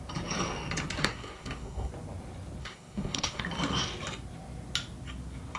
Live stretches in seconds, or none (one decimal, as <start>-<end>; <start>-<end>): 0.0-1.0; 1.9-2.6; 3.4-5.6